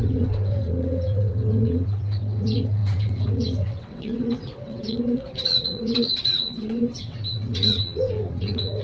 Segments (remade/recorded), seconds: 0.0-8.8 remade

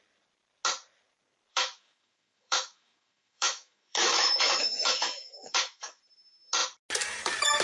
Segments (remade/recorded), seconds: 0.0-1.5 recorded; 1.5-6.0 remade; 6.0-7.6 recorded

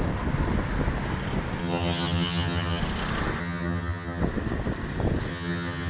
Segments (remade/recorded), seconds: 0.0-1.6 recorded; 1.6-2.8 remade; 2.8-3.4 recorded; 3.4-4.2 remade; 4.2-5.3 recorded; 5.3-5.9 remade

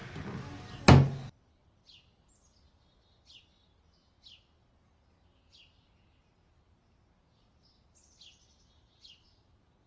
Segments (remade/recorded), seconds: 0.0-9.9 recorded

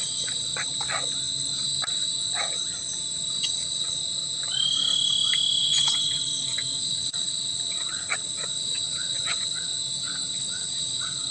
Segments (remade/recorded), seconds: 0.0-0.5 remade; 0.5-3.5 recorded; 3.5-4.0 remade; 4.0-5.6 recorded; 5.6-9.7 remade; 9.7-10.3 recorded; 10.3-11.3 remade

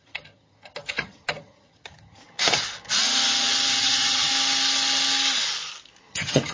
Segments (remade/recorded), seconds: 0.0-2.2 remade; 2.2-3.8 recorded; 3.8-4.3 remade; 4.3-6.1 recorded; 6.1-6.5 remade

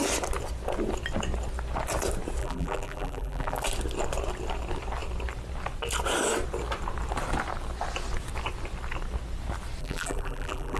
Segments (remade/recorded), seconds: 0.0-2.4 recorded; 2.4-3.6 remade; 3.6-9.8 recorded; 9.8-10.8 remade